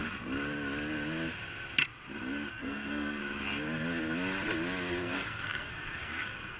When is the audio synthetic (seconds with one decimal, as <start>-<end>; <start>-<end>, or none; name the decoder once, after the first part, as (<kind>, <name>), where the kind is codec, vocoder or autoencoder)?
2.5-3.2 (codec, SNAC); 5.0-6.6